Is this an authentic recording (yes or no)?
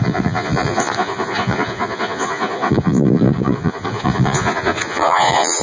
no